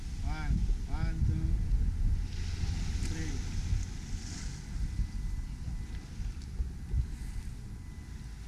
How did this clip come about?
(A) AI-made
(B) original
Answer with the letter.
B